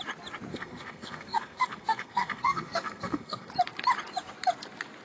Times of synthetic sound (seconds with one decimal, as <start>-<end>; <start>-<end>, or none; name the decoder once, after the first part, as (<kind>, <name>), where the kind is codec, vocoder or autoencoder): 0.5-3.5 (codec, SNAC)